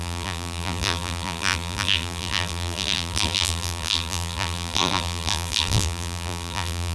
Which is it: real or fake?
fake